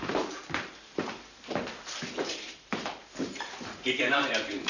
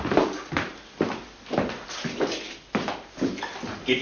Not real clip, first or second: first